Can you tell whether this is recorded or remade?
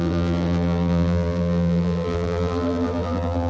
remade